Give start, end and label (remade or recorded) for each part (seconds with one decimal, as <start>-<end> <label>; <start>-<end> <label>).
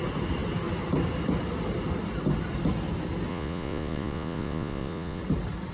0.0-3.3 recorded; 3.3-5.2 remade; 5.2-5.7 recorded